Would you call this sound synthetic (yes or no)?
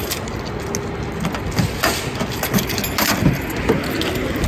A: no